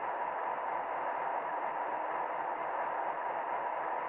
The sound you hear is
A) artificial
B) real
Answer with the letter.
B